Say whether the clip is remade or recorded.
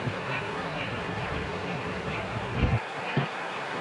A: remade